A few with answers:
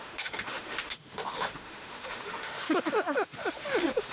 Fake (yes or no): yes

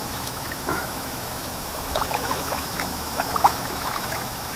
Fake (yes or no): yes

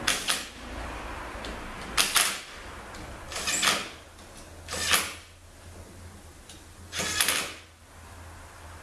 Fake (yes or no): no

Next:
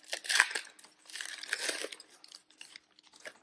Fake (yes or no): no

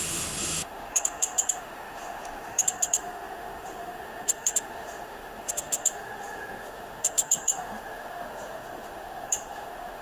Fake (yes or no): yes